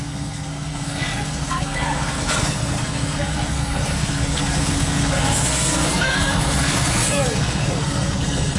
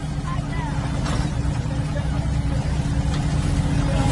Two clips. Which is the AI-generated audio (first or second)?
first